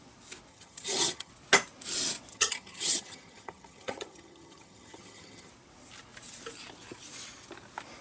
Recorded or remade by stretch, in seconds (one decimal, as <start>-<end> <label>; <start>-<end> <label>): 0.0-0.5 recorded; 0.5-1.3 remade; 1.3-2.3 recorded; 2.3-5.5 remade; 5.5-8.0 recorded